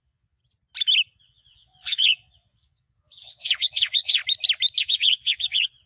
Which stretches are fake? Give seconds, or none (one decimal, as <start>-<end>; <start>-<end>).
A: 0.0-0.4; 1.2-4.2; 4.8-5.9